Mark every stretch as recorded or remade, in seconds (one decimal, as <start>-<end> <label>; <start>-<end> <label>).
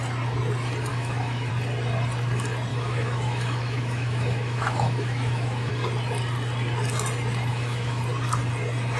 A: 0.0-0.9 recorded; 0.9-1.5 remade; 1.5-2.7 recorded; 2.7-5.7 remade; 5.7-7.5 recorded; 7.5-8.0 remade; 8.0-9.0 recorded